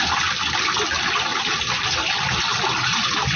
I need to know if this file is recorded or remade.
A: recorded